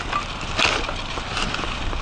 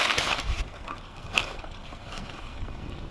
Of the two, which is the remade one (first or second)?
second